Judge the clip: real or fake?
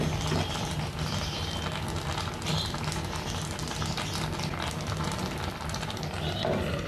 real